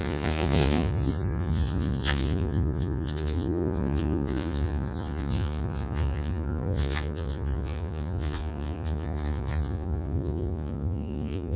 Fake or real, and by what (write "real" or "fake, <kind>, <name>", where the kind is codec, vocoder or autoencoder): fake, vocoder, Vocos